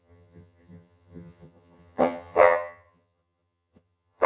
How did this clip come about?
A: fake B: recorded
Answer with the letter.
A